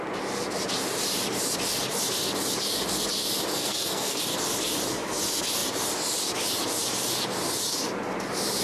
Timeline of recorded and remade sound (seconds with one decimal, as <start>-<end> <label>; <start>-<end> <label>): 0.0-3.6 recorded; 3.6-4.2 remade; 4.2-8.6 recorded